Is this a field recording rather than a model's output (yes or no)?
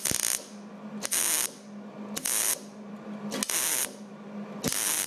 yes